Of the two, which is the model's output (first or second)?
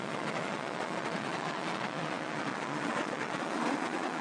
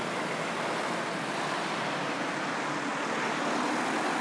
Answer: first